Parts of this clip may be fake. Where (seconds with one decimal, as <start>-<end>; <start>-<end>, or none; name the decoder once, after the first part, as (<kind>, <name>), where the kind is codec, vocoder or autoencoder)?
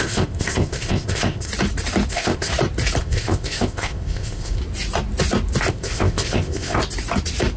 0.0-1.5 (codec, ZipCodec); 2.1-2.5; 3.0-4.6; 5.7-6.8